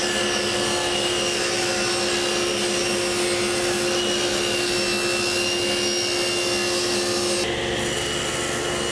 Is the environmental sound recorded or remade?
recorded